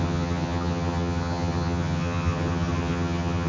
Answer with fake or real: fake